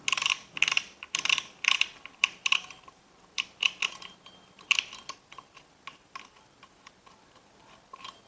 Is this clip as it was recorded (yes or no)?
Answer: yes